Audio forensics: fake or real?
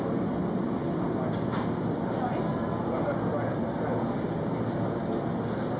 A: real